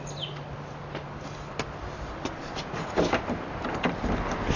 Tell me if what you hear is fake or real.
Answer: real